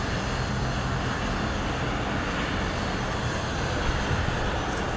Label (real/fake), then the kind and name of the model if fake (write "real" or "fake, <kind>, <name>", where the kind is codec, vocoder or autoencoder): real